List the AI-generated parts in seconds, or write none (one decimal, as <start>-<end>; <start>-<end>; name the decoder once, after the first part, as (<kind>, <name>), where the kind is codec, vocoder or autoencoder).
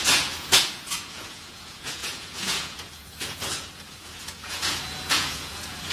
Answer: 0.0-5.9 (vocoder, Vocos)